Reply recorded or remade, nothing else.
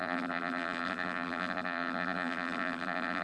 remade